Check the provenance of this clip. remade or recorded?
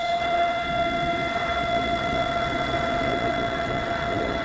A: remade